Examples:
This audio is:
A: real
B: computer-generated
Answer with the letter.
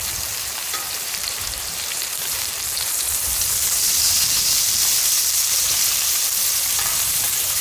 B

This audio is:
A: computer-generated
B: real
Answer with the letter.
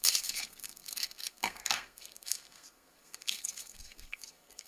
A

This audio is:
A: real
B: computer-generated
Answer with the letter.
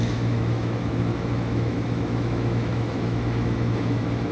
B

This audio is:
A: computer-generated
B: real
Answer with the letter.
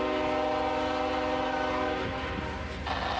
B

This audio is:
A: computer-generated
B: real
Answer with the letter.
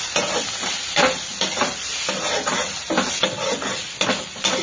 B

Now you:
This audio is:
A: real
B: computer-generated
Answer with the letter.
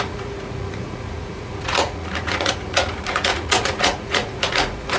B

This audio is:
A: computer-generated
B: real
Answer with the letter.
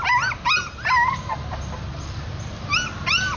B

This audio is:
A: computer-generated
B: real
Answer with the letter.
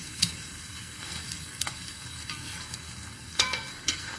A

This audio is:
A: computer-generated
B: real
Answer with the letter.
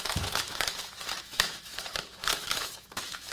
A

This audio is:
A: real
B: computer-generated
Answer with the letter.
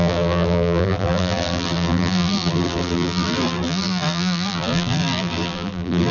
B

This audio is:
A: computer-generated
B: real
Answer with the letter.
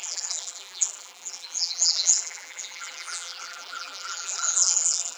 A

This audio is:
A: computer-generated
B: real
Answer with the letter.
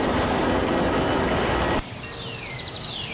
B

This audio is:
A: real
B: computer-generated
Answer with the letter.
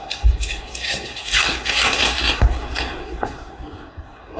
B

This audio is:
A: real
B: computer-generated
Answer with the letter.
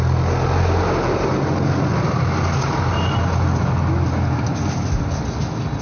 A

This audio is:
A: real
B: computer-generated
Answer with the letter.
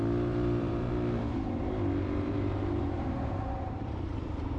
B